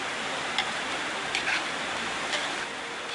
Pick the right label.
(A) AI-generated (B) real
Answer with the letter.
B